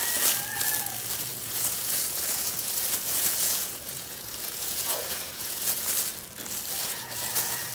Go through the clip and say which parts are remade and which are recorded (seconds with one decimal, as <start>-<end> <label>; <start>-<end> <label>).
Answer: 0.0-1.3 recorded; 1.3-5.9 remade; 5.9-6.8 recorded; 6.8-7.7 remade